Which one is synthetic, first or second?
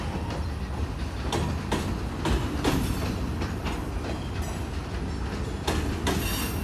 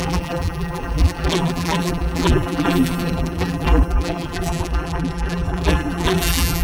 second